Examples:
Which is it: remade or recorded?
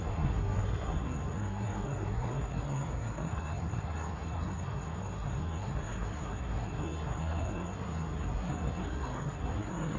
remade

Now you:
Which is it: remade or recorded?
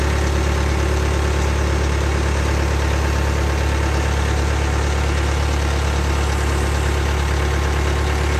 recorded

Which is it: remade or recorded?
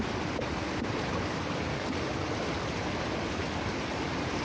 recorded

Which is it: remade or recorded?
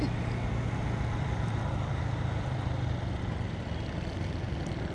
recorded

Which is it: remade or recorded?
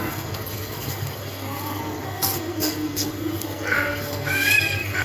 remade